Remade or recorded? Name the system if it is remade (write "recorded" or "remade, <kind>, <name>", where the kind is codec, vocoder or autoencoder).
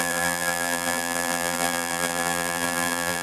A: remade, vocoder, BigVGAN v2